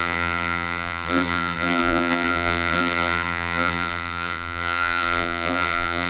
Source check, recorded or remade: remade